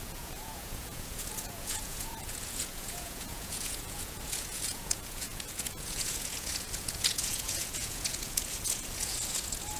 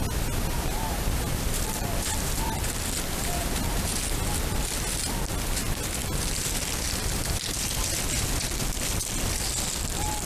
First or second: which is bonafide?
second